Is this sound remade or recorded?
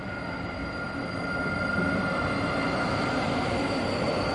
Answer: recorded